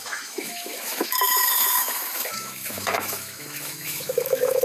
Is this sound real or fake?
fake